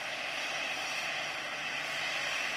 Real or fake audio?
real